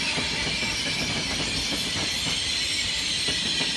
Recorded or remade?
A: recorded